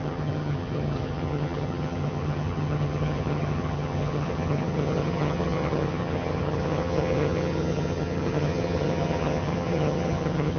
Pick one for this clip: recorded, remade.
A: remade